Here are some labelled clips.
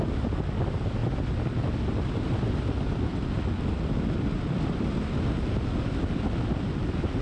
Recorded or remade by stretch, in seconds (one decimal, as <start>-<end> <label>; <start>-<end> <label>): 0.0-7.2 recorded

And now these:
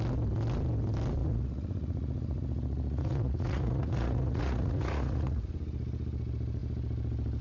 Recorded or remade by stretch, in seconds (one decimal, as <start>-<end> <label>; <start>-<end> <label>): 0.0-1.2 recorded; 1.2-5.4 remade; 5.4-7.4 recorded

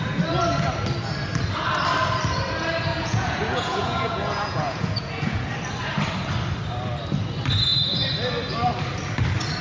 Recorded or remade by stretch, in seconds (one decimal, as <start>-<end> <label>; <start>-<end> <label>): 0.0-2.9 recorded; 2.9-5.5 remade; 5.5-9.6 recorded